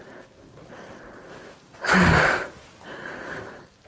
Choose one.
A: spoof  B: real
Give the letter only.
B